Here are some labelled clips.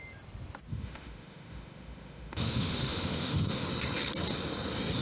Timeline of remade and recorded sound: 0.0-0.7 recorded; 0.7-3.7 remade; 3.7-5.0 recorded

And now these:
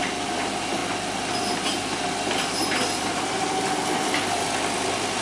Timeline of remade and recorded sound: 0.0-5.2 recorded

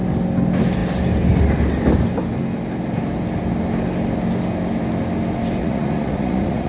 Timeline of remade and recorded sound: 0.0-5.6 recorded; 5.6-6.7 remade

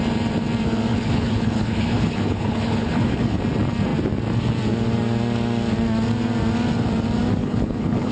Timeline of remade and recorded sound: 0.0-0.9 recorded; 0.9-3.4 remade; 3.4-7.4 recorded; 7.4-8.1 remade